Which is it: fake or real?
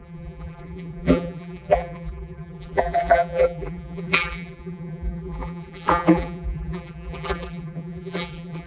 fake